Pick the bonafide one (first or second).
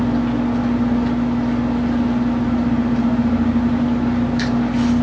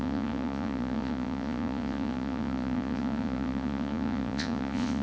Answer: first